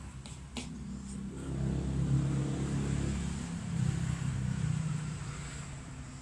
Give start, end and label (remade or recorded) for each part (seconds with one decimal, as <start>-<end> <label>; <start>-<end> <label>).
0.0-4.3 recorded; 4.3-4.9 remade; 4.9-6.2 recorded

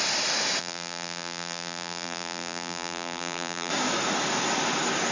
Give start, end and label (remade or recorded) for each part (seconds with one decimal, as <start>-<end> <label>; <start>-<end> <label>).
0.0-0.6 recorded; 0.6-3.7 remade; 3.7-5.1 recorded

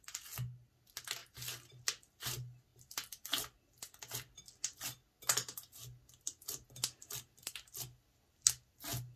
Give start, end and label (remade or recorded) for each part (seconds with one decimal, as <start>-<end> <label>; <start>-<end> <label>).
0.0-9.2 recorded

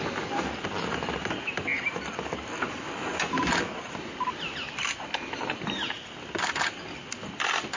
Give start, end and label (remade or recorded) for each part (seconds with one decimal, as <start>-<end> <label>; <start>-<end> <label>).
0.0-7.8 recorded

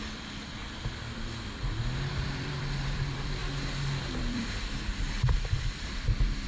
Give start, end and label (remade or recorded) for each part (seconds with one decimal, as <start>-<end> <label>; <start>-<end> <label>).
0.0-0.6 remade; 0.6-2.1 recorded; 2.1-3.4 remade; 3.4-4.0 recorded; 4.0-6.5 remade